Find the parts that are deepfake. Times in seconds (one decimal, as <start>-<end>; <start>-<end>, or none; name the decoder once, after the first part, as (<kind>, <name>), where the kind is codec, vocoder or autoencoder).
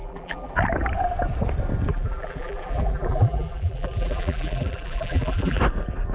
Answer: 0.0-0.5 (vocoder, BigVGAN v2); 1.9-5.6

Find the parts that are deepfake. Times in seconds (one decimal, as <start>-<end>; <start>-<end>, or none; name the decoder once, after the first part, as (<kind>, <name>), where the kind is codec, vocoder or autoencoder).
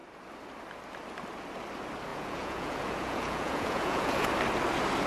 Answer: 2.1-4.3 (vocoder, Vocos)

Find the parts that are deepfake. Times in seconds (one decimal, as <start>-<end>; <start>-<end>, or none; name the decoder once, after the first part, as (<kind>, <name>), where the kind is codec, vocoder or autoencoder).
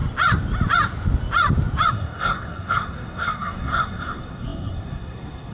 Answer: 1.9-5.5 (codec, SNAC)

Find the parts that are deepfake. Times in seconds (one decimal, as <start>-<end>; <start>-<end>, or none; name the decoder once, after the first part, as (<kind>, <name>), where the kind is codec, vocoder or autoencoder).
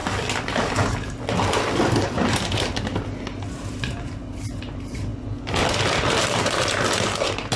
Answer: 4.6-5.1 (vocoder, BigVGAN v2); 6.1-7.6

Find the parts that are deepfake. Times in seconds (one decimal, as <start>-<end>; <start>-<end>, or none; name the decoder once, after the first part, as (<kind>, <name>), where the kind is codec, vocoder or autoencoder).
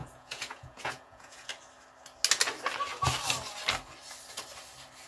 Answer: 0.0-1.5 (vocoder, Vocos)